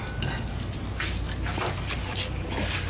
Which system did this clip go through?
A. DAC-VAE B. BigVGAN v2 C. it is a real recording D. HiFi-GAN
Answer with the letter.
C